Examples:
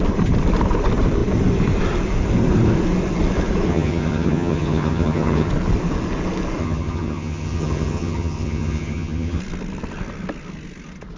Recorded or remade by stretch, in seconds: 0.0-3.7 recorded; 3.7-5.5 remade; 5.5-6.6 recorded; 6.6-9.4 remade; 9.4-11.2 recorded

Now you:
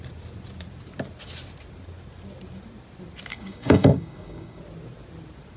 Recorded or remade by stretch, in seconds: 0.0-3.3 recorded; 3.3-4.6 remade; 4.6-5.6 recorded

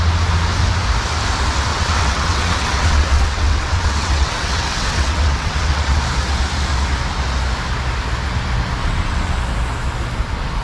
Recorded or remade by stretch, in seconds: 0.0-1.7 recorded; 1.7-6.0 remade; 6.0-8.8 recorded; 8.8-9.4 remade; 9.4-10.6 recorded

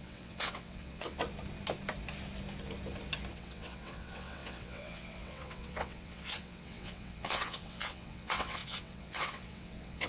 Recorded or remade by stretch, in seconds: 0.0-1.2 remade; 1.2-3.3 recorded; 3.3-10.1 remade

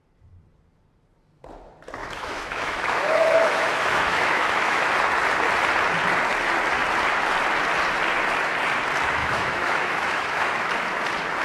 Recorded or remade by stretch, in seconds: 0.0-2.0 recorded; 2.0-4.9 remade; 4.9-9.2 recorded; 9.2-10.7 remade; 10.7-11.4 recorded

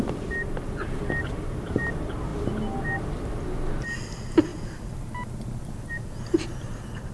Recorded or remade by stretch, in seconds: 0.0-7.1 recorded

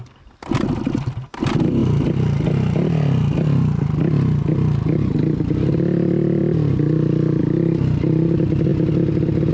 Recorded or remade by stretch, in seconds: 0.0-9.5 recorded